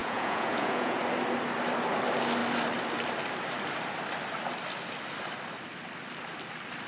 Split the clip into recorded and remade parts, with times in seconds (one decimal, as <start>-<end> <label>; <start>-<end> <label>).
0.0-1.0 remade; 1.0-6.9 recorded

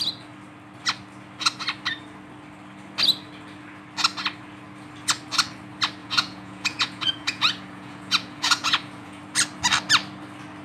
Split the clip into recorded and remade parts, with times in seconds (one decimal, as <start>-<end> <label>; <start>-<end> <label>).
0.0-6.0 recorded; 6.0-9.2 remade; 9.2-10.6 recorded

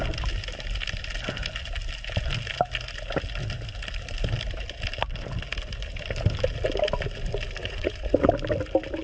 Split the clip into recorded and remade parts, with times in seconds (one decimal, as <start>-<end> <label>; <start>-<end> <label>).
0.0-7.6 recorded; 7.6-8.3 remade; 8.3-9.0 recorded